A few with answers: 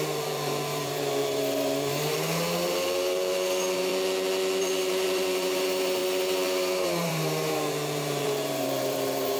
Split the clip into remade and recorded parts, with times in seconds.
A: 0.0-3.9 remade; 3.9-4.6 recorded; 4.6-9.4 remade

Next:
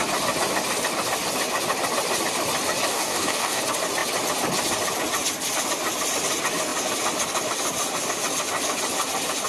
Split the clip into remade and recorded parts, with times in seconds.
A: 0.0-2.9 recorded; 2.9-3.6 remade; 3.6-9.5 recorded